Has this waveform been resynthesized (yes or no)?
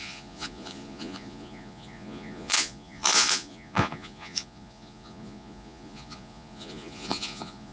yes